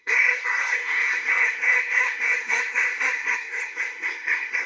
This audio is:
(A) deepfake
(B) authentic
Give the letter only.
A